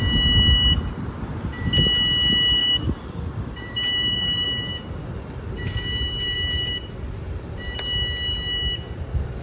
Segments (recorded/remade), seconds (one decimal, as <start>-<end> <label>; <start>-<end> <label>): 0.0-2.6 recorded; 2.6-7.6 remade; 7.6-9.4 recorded